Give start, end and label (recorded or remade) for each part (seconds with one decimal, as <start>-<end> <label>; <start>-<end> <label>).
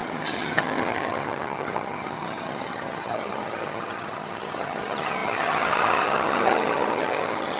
0.0-7.6 remade